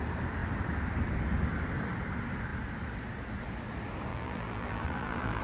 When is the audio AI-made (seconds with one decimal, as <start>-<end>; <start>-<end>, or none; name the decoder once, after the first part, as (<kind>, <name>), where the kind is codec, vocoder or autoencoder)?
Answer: 4.1-5.4 (vocoder, BigVGAN v2)